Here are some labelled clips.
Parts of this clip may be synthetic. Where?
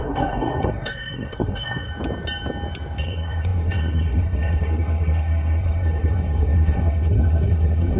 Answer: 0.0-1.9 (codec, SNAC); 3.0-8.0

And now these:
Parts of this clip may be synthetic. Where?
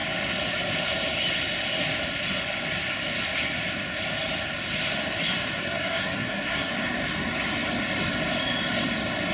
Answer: 5.6-6.7 (codec, SNAC)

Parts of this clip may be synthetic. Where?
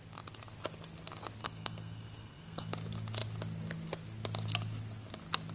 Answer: 1.4-2.7 (codec, SNAC)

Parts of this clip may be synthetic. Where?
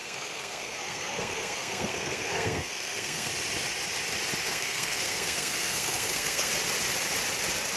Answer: 0.0-3.3 (codec, SNAC); 4.5-6.5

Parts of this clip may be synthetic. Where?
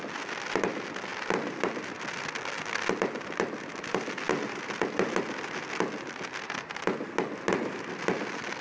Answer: none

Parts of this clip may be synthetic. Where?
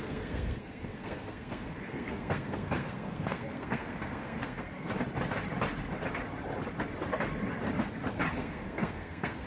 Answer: 0.0-4.9 (codec, SNAC); 8.3-9.5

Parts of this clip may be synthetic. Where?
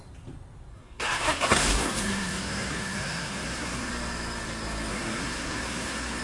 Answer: 0.7-3.9 (codec, SNAC); 4.9-6.2